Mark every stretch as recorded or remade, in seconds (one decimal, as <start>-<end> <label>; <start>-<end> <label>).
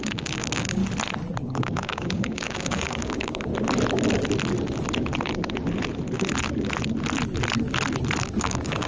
0.0-0.8 remade; 0.8-1.4 recorded; 1.4-3.5 remade; 3.5-8.4 recorded; 8.4-8.9 remade